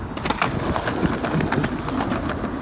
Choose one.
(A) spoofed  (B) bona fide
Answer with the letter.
B